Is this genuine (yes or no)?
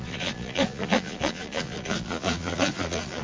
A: no